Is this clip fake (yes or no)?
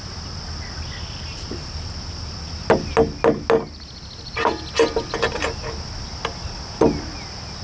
no